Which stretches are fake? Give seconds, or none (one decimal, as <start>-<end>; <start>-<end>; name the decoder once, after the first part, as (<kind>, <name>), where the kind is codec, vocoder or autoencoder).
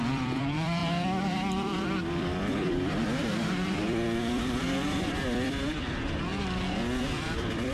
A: 0.0-6.3 (vocoder, BigVGAN v2); 7.0-7.7